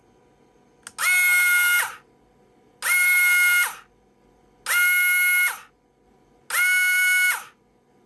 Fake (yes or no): no